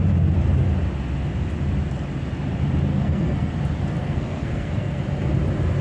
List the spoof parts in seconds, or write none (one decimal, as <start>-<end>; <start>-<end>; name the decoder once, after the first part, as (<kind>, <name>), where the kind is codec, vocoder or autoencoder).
2.9-3.5 (codec, SNAC); 4.0-5.0